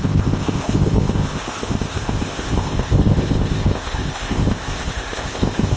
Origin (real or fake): fake